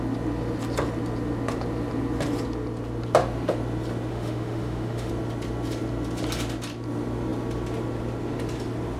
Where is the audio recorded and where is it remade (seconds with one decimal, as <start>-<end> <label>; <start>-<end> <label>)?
0.0-4.1 recorded; 4.1-5.1 remade; 5.1-9.0 recorded